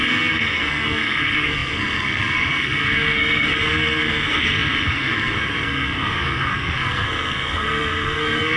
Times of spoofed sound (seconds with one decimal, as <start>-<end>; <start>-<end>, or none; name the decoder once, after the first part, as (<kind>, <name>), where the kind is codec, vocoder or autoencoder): 0.0-8.6 (codec, SNAC)

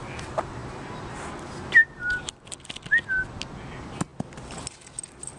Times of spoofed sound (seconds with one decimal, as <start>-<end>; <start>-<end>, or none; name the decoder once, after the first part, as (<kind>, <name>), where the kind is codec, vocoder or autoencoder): none

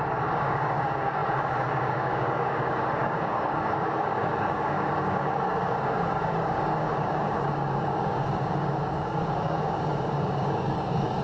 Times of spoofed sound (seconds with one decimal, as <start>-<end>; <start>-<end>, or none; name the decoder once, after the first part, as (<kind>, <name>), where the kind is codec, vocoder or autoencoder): 0.0-11.2 (codec, DAC)

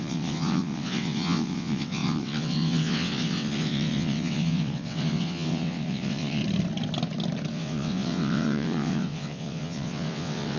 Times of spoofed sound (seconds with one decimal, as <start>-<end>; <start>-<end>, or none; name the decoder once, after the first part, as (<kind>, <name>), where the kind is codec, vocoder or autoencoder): 0.0-6.4 (vocoder, WaveNeXt); 7.5-10.6